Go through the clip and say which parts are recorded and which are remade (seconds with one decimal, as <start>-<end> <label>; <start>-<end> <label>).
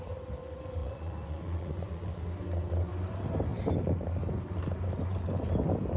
0.0-0.8 recorded; 0.8-2.2 remade; 2.2-6.0 recorded